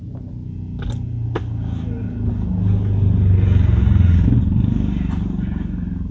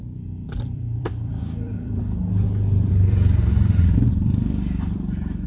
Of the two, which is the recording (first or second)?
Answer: first